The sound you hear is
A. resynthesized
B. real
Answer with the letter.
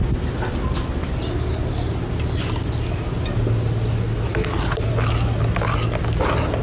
B